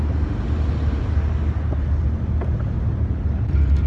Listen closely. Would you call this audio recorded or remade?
recorded